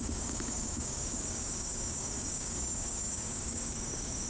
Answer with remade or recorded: remade